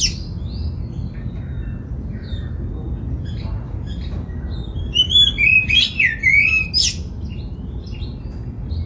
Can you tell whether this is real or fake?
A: real